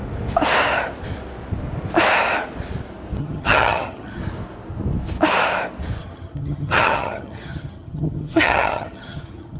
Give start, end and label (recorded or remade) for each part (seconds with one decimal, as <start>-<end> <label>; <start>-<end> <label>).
0.0-3.2 recorded; 3.2-4.2 remade; 4.2-6.0 recorded; 6.0-9.6 remade